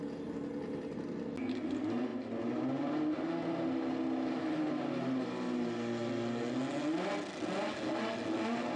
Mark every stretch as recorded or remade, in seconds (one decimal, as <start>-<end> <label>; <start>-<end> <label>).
0.0-8.8 recorded